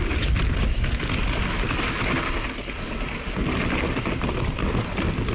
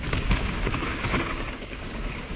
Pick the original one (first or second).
first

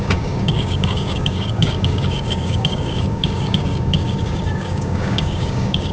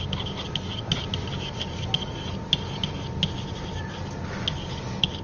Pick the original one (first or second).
second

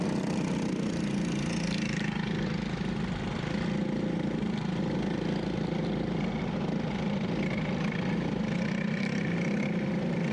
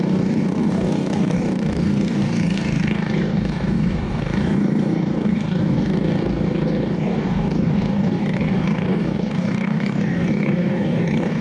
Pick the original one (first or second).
first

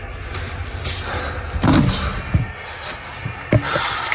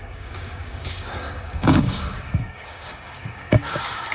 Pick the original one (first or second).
first